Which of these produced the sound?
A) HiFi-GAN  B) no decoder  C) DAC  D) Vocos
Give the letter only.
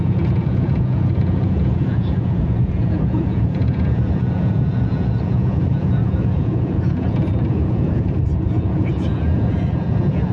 D